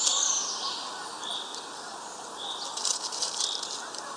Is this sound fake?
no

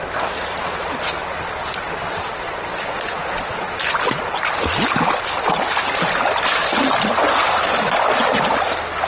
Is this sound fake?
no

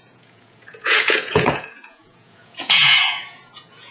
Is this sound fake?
yes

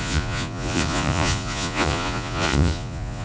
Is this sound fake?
yes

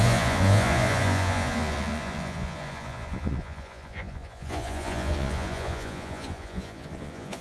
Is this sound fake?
yes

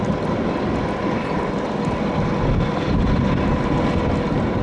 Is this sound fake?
no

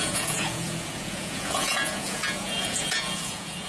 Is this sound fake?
yes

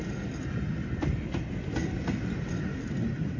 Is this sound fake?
no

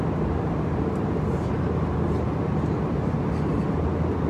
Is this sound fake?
no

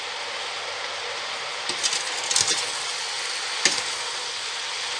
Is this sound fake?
no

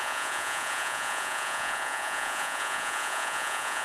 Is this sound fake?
yes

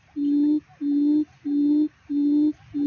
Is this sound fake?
no